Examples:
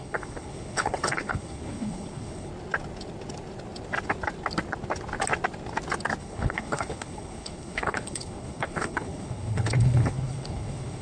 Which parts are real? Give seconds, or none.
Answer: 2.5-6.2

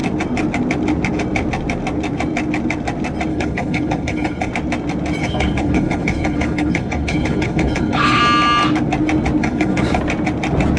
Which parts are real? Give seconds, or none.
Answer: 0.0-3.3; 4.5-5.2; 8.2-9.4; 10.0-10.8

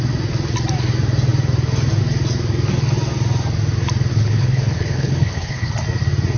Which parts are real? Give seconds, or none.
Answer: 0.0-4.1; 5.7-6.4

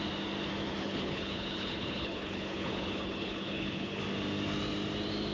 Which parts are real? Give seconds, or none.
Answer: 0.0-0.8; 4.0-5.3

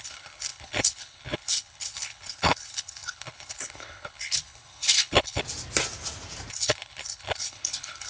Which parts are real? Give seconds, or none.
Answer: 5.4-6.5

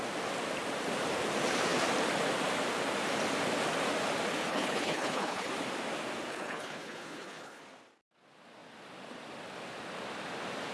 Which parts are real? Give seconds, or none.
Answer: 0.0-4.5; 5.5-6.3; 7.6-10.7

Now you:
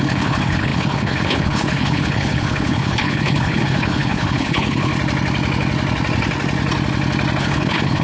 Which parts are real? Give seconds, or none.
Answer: 4.9-7.4

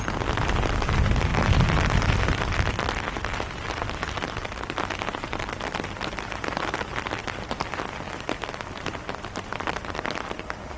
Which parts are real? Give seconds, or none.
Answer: 0.0-10.8